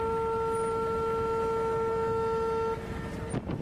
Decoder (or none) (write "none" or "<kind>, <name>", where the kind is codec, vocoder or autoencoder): none